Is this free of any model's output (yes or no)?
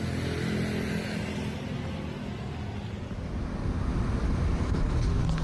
yes